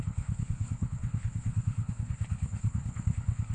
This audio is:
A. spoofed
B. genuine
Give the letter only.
A